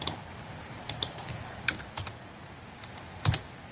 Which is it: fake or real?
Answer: real